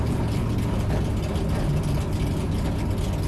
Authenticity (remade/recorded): recorded